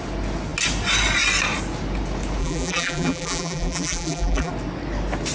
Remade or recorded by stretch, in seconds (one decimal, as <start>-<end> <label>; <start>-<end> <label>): 0.0-2.4 recorded; 2.4-4.5 remade; 4.5-5.3 recorded